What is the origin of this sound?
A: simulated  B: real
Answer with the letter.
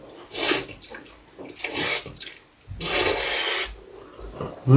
B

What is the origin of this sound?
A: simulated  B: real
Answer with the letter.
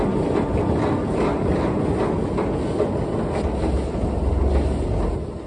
B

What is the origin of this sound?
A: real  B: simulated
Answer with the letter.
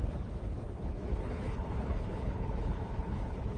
B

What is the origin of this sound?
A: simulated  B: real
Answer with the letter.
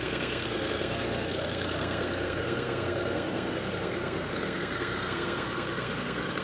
A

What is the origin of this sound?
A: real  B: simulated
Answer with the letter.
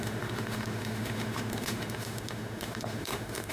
B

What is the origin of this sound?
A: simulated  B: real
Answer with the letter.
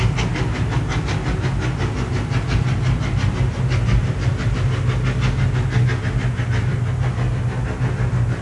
B